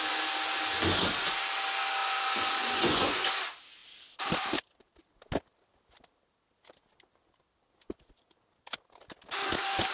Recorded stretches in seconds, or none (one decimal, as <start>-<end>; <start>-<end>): 0.0-2.0; 3.3-9.9